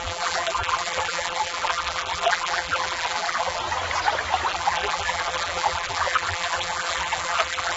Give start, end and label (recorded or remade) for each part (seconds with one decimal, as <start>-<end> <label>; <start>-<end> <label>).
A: 0.0-3.6 remade; 3.6-4.5 recorded; 4.5-7.8 remade

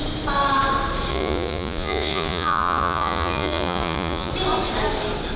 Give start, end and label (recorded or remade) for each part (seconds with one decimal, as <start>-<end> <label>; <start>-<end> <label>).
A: 0.0-1.1 recorded; 1.1-4.3 remade; 4.3-5.4 recorded